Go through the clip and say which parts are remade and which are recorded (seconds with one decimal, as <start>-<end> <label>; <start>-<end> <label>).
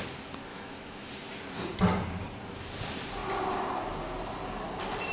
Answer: 0.0-0.5 recorded; 0.5-1.1 remade; 1.1-5.1 recorded